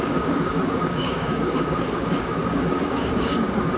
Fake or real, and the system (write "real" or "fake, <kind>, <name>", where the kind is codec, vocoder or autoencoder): fake, codec, DAC